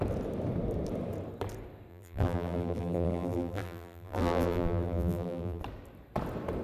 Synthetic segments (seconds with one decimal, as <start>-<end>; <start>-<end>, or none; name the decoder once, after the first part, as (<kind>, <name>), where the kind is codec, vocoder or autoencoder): 1.9-5.6 (vocoder, BigVGAN v2)